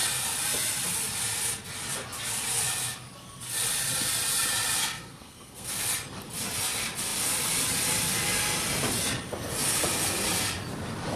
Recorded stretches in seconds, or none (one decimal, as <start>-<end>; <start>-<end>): 0.0-4.8; 5.7-11.2